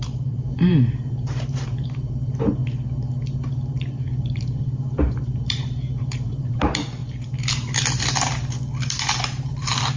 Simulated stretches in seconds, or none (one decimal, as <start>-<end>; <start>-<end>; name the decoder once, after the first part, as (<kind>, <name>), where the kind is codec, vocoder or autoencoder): 0.0-2.6 (vocoder, BigVGAN v2); 3.5-7.0; 9.2-10.0